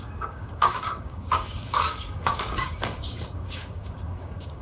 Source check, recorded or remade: remade